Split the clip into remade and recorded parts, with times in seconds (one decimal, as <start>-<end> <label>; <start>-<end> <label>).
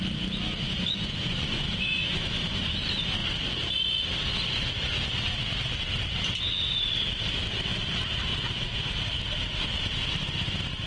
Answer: 0.0-0.6 recorded; 0.6-2.7 remade; 2.7-8.3 recorded; 8.3-8.9 remade; 8.9-10.9 recorded